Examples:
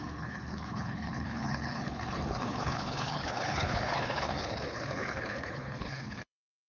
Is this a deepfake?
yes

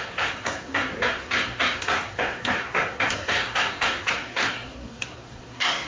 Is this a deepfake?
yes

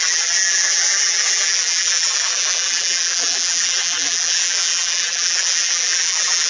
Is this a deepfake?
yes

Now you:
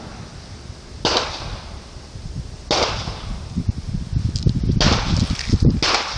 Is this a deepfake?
no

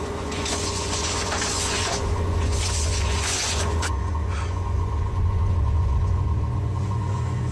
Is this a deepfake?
yes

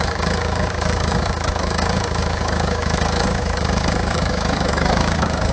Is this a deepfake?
yes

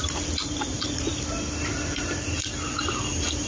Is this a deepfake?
no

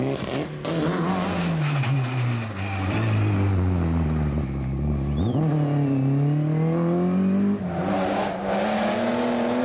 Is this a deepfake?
no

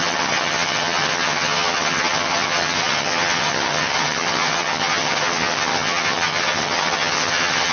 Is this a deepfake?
yes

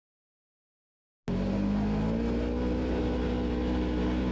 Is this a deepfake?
no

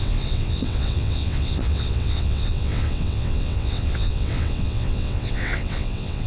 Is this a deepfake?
yes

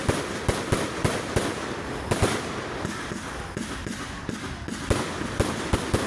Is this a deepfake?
no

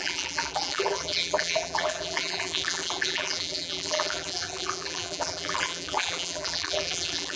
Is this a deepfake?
yes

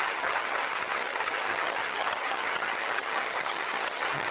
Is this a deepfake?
yes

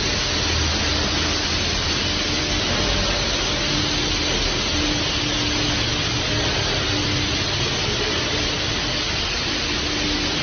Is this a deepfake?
no